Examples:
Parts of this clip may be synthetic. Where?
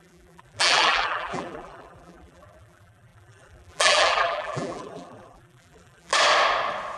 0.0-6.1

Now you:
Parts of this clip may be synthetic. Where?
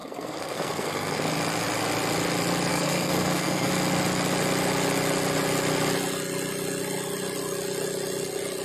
0.0-1.2; 2.7-3.7